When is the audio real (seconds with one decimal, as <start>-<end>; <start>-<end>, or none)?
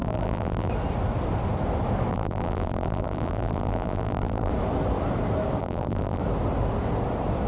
0.7-2.1; 4.5-5.6; 6.2-7.5